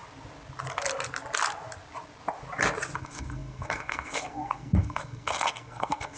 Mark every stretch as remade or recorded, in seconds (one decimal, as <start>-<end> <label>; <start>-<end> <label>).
0.0-3.0 recorded; 3.0-6.2 remade